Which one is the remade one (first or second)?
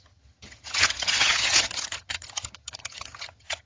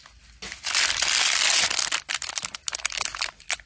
first